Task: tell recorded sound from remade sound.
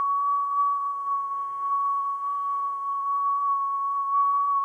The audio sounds remade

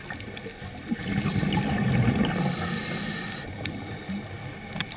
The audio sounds recorded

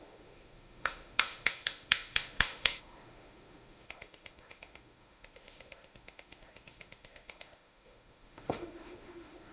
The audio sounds remade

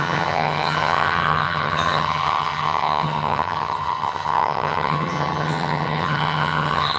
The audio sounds remade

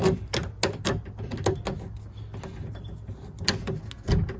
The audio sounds recorded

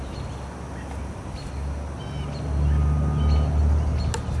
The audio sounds recorded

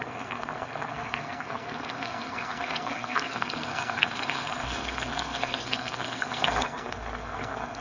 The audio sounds remade